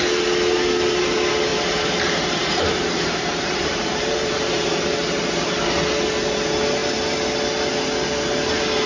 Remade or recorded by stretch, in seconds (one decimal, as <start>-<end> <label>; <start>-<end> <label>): 0.0-1.5 recorded; 1.5-4.6 remade; 4.6-8.9 recorded